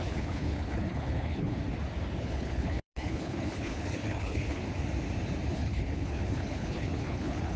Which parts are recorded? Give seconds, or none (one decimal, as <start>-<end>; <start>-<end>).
1.6-2.2; 4.6-5.5